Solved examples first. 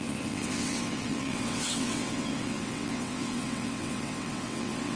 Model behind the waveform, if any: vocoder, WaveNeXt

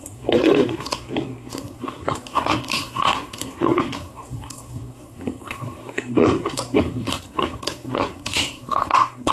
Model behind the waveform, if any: codec, SNAC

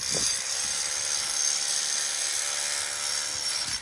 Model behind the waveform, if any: none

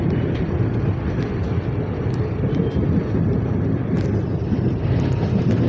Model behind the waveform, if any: none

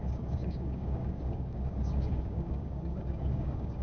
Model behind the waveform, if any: codec, DAC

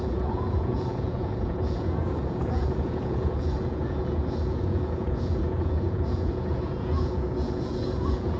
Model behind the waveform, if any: vocoder, Vocos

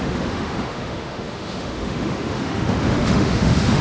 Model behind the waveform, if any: autoencoder, DAC-VAE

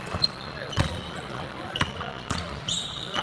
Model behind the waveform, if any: vocoder, Vocos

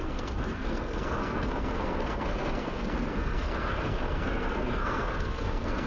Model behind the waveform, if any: codec, SNAC